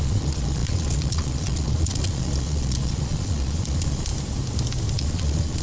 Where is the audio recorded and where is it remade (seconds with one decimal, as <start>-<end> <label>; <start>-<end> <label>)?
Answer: 0.0-4.1 remade; 4.1-4.9 recorded; 4.9-5.6 remade

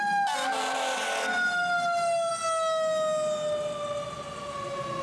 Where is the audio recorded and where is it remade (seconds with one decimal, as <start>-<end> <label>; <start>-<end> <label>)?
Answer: 0.0-5.0 recorded

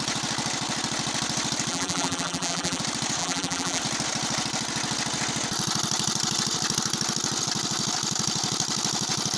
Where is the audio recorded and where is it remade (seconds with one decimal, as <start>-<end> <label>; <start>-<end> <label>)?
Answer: 0.0-1.7 recorded; 1.7-2.8 remade; 2.8-3.2 recorded; 3.2-3.8 remade; 3.8-9.4 recorded

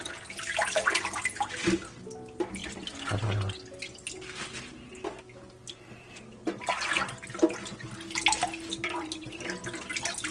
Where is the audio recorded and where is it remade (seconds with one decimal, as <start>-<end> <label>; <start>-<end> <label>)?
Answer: 0.0-2.6 recorded; 2.6-3.2 remade; 3.2-10.3 recorded

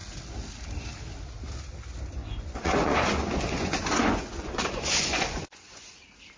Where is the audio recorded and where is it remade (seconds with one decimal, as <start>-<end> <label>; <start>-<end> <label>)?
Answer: 0.0-2.2 recorded; 2.2-6.0 remade; 6.0-6.4 recorded

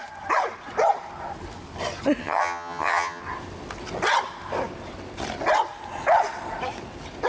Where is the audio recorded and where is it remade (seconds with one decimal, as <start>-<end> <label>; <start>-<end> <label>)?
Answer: 0.0-2.2 recorded; 2.2-3.2 remade; 3.2-7.3 recorded

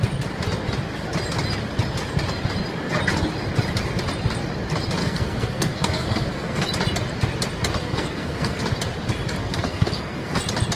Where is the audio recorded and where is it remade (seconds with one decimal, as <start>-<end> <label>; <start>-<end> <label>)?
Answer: 0.0-5.0 recorded; 5.0-6.7 remade; 6.7-7.8 recorded; 7.8-8.6 remade; 8.6-9.4 recorded; 9.4-10.4 remade; 10.4-10.8 recorded